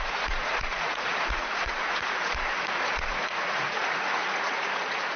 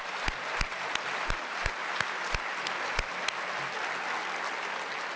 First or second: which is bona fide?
second